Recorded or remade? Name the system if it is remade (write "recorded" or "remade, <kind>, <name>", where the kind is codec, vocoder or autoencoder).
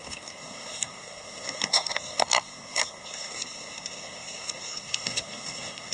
remade, codec, SNAC